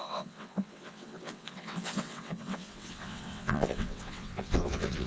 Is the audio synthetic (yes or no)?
yes